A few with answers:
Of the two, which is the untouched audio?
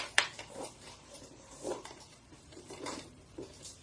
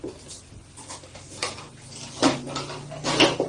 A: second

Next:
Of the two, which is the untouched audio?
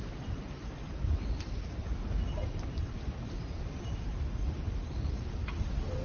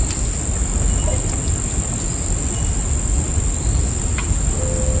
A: second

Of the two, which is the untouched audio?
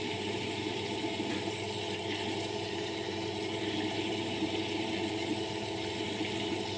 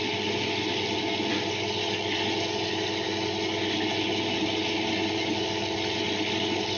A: second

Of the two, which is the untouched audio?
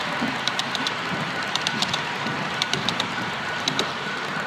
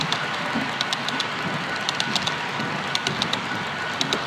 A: second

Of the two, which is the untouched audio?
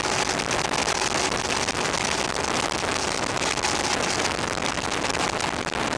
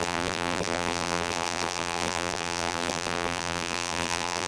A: first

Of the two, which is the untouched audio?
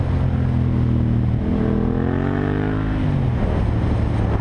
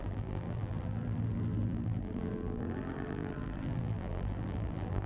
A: first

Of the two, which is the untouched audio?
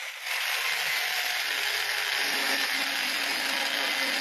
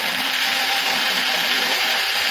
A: first